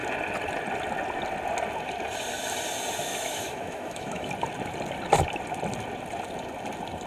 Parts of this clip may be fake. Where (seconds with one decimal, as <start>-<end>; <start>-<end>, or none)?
3.1-4.3